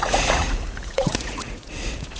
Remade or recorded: remade